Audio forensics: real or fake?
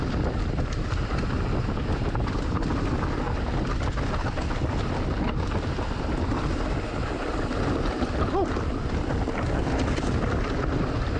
real